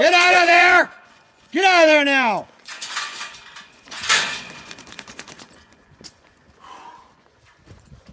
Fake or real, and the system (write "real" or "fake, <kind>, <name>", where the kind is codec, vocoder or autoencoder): fake, vocoder, Vocos